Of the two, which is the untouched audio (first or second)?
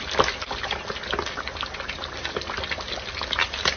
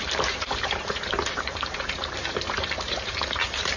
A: first